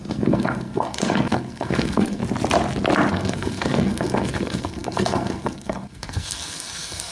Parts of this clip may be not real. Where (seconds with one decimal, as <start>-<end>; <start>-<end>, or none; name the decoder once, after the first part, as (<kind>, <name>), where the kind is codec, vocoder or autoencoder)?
0.0-2.2 (codec, SNAC); 3.1-7.1